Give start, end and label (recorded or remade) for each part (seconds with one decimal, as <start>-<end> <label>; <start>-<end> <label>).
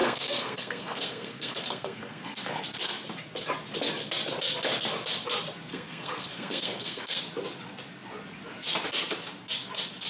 0.0-2.6 remade; 2.6-5.7 recorded; 5.7-7.2 remade; 7.2-10.1 recorded